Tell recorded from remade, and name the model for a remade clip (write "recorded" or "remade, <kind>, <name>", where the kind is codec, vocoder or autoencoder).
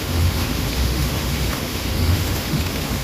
remade, autoencoder, DAC-VAE